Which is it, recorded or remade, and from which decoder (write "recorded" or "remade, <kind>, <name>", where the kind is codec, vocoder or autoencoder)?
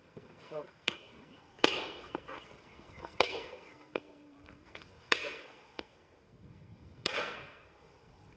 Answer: remade, codec, SNAC